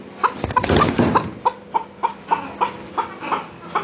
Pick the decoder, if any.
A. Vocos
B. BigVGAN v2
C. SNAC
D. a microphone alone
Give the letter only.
D